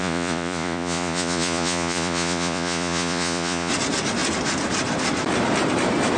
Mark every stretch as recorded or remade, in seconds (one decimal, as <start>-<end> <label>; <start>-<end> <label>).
0.0-3.7 remade; 3.7-6.2 recorded